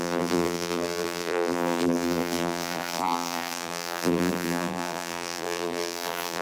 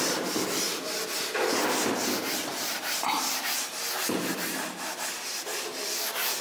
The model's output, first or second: first